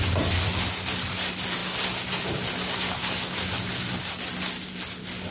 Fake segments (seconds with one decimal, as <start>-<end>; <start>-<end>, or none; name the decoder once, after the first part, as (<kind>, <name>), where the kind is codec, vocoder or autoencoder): none